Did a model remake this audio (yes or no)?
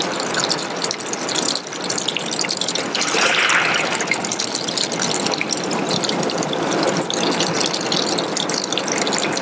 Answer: no